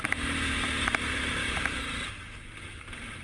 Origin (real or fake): fake